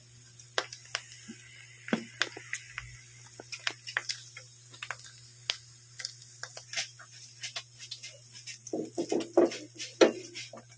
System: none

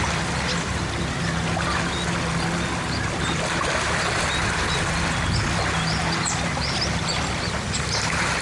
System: none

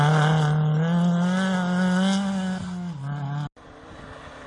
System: none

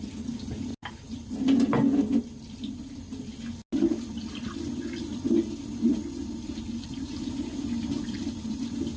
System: none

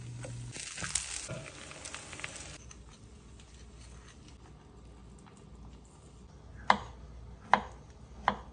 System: none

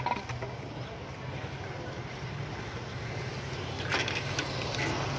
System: none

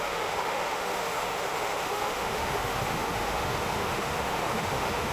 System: autoencoder, DAC-VAE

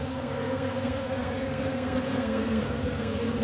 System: codec, SNAC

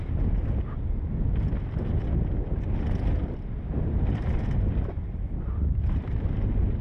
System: none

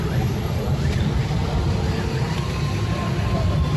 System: none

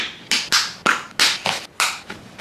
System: none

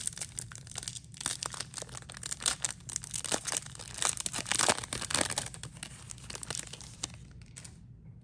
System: none